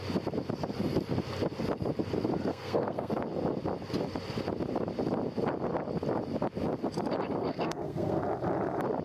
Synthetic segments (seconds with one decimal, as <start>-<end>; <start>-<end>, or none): 2.5-3.1; 7.4-8.2